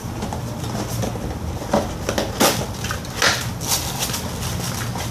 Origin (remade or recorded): recorded